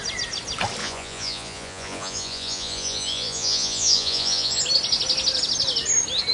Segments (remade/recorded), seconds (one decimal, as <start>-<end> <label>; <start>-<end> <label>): 0.0-0.8 recorded; 0.8-4.6 remade; 4.6-6.3 recorded